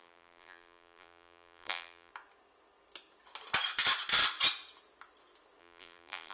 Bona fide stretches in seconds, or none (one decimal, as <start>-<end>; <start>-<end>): 2.1-5.6